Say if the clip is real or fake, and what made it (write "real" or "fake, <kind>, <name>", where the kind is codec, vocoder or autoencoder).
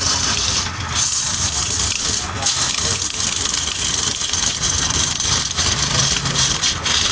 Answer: real